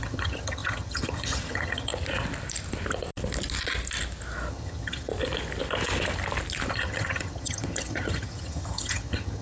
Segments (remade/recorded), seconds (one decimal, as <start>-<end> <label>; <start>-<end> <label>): 0.0-1.9 remade; 1.9-4.5 recorded; 4.5-5.1 remade; 5.1-6.7 recorded; 6.7-9.4 remade